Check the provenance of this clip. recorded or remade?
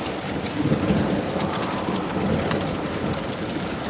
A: remade